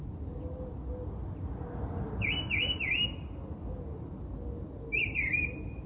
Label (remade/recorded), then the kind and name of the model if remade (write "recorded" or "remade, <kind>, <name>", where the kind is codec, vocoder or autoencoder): recorded